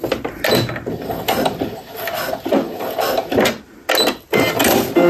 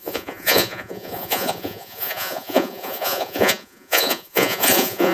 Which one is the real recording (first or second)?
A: first